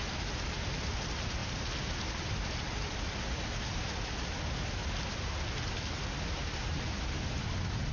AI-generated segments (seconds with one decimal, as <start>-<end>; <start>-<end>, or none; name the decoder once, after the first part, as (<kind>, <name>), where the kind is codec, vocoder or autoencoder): none